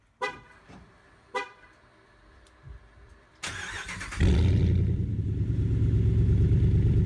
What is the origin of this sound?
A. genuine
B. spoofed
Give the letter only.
B